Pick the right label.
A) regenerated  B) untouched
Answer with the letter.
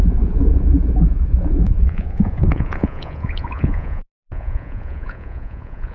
A